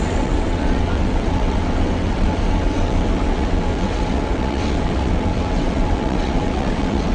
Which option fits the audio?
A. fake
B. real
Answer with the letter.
A